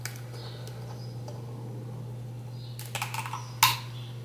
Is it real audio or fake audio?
real